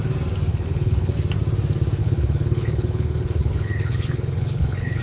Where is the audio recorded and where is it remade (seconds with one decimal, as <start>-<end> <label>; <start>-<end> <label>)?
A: 0.0-0.5 recorded; 0.5-1.1 remade; 1.1-2.0 recorded; 2.0-5.0 remade